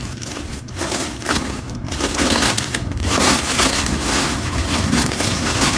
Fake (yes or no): yes